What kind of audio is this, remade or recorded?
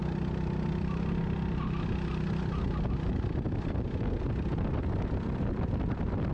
recorded